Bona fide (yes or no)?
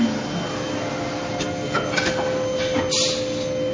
yes